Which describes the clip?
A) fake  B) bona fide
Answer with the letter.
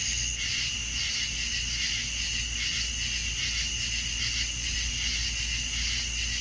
B